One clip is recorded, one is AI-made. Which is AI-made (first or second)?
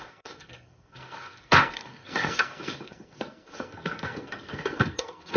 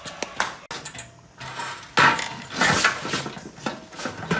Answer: first